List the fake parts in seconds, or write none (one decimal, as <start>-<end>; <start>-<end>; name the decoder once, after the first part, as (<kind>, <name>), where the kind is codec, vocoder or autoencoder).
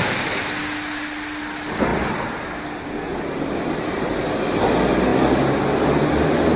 none